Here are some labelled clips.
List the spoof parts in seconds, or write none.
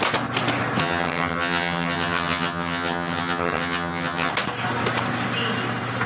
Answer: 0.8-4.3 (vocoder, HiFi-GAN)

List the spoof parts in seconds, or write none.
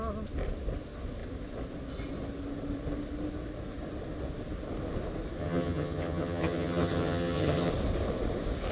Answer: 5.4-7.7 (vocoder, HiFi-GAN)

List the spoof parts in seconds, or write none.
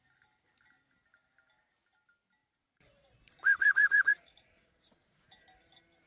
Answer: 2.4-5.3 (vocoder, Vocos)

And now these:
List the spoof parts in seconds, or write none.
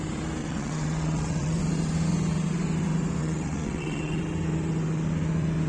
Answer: 0.4-1.6 (vocoder, WaveNeXt); 3.2-4.2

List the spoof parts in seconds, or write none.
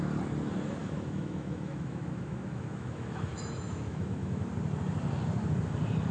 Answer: 0.8-4.5 (autoencoder, DAC-VAE)